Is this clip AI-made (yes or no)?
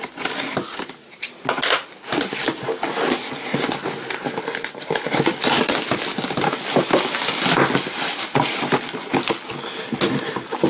no